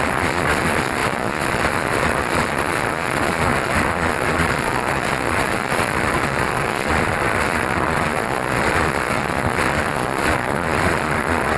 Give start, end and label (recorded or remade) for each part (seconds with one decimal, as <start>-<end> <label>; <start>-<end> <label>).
0.0-11.6 remade